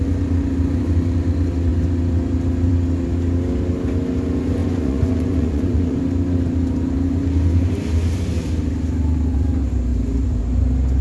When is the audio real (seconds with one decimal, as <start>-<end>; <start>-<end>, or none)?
0.0-4.6; 6.0-11.0